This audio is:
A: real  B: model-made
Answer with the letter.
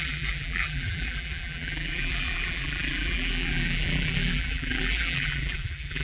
B